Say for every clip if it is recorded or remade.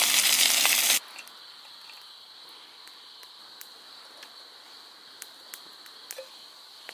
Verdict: recorded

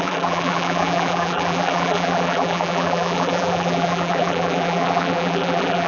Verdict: remade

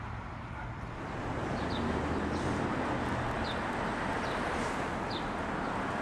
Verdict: recorded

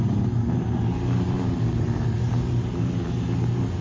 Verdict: remade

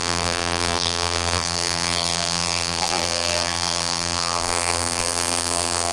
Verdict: remade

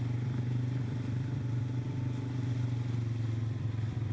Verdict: remade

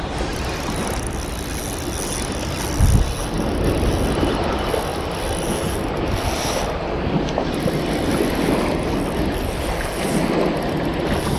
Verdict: recorded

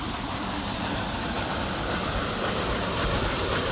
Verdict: remade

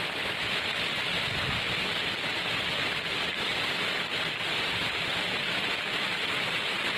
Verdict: recorded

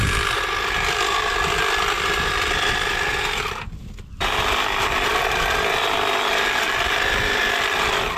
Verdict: recorded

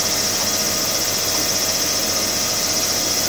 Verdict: recorded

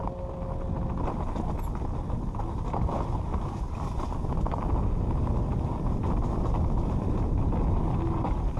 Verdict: recorded